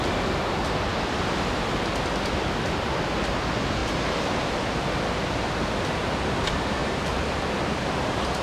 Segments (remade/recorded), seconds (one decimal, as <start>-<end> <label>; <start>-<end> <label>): 0.0-6.8 recorded; 6.8-7.4 remade; 7.4-8.4 recorded